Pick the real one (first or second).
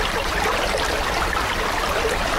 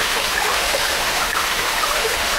first